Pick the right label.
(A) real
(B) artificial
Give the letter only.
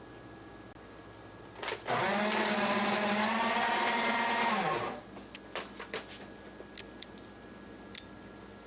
A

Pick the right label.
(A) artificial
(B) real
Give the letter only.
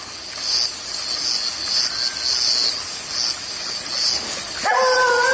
B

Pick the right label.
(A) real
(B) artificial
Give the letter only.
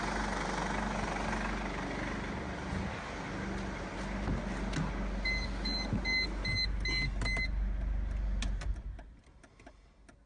A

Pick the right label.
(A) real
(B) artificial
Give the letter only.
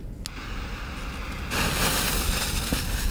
A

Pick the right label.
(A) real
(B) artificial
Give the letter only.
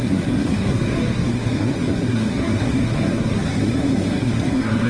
B